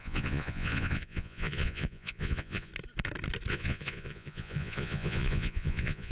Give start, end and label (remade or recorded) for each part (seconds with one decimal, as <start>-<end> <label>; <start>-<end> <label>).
0.0-2.7 remade; 2.7-3.5 recorded; 3.5-6.1 remade